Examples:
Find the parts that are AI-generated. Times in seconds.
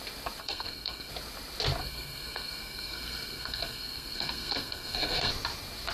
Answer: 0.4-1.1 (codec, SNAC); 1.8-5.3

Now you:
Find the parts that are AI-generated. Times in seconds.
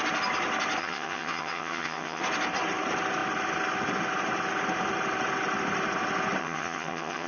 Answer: 0.8-2.2 (vocoder, HiFi-GAN); 6.4-7.3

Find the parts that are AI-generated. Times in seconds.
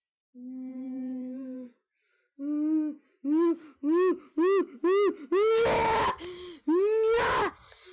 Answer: 0.7-2.0 (vocoder, Vocos)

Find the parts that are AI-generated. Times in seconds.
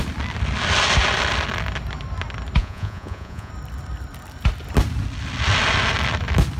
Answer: 2.6-3.5 (vocoder, Vocos)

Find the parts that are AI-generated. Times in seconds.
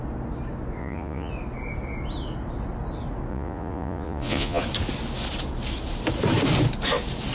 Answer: 0.8-1.3 (vocoder, Vocos); 3.3-4.6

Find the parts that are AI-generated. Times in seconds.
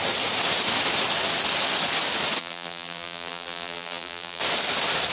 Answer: 2.4-4.4 (vocoder, BigVGAN v2)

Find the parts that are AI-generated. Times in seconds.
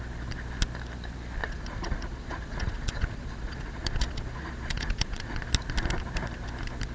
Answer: 1.4-5.5 (vocoder, Vocos)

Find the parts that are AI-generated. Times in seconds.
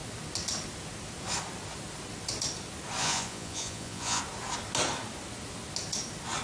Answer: 3.0-4.2 (vocoder, Vocos)